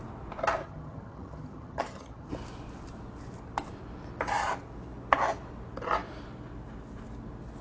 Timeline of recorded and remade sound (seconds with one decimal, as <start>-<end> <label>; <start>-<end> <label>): 0.0-0.6 recorded; 0.6-2.3 remade; 2.3-7.6 recorded